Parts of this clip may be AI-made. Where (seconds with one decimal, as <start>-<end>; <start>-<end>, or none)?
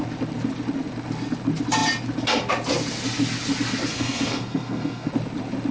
3.9-5.1